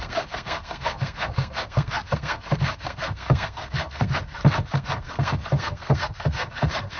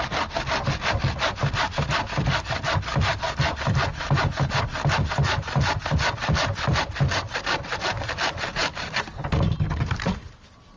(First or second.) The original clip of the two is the second